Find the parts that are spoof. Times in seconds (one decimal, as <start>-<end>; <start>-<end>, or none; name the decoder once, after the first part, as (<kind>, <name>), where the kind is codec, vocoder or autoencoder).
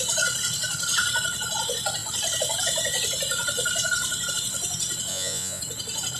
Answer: 5.1-5.6 (vocoder, Vocos)